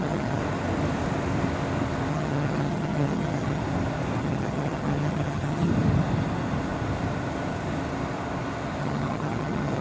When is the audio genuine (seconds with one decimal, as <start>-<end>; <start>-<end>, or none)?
0.4-2.1; 3.6-4.2; 5.7-8.8